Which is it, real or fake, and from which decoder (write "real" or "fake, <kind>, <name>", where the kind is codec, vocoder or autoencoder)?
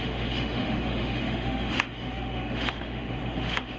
fake, autoencoder, DAC-VAE